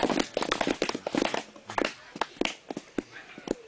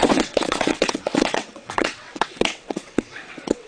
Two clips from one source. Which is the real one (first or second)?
first